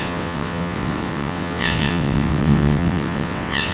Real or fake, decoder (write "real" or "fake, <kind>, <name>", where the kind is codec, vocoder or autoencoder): fake, vocoder, WaveNeXt